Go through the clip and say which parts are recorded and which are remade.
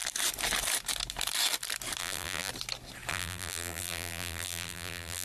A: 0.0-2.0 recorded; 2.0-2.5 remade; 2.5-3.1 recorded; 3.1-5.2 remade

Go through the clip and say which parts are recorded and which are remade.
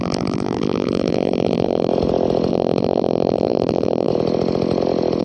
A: 0.0-1.9 remade; 1.9-2.5 recorded; 2.5-4.1 remade; 4.1-5.2 recorded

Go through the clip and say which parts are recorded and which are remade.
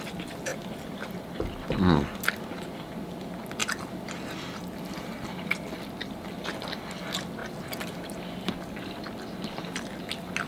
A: 0.0-10.5 recorded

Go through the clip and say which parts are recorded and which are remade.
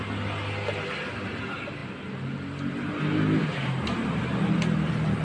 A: 0.0-3.4 recorded; 3.4-4.2 remade; 4.2-5.2 recorded